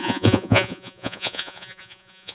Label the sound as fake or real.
fake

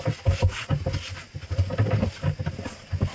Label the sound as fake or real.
real